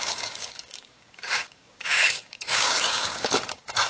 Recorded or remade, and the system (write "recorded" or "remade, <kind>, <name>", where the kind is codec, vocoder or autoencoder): remade, codec, DAC